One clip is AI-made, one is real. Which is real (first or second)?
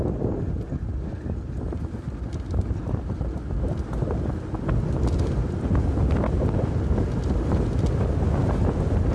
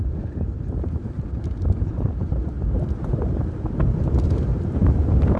first